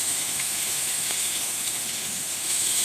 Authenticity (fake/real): fake